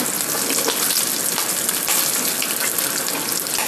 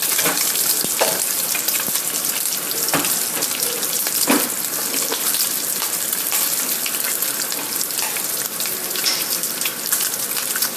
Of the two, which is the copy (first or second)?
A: second